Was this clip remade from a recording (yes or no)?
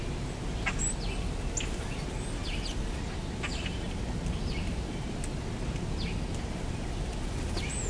no